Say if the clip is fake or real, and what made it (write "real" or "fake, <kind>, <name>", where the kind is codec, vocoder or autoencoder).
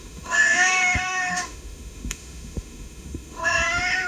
fake, autoencoder, DAC-VAE